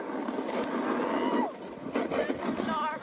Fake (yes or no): no